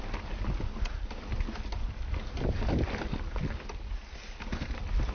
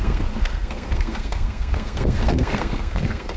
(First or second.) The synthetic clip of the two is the second